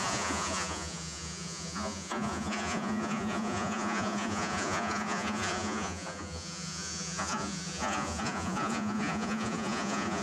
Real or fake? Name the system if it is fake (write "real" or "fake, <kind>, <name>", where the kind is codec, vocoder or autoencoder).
fake, vocoder, Vocos